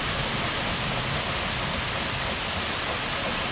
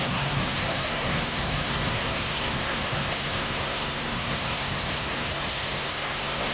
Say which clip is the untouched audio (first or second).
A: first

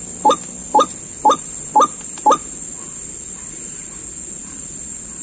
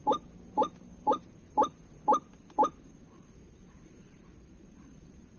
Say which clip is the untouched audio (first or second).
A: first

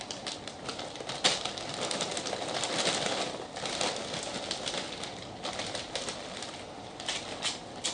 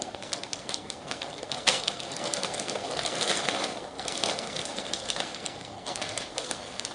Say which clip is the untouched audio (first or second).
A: first